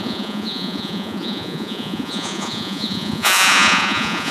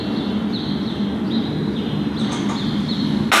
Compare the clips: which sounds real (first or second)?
second